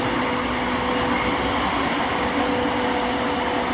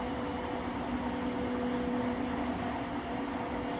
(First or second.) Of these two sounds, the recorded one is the first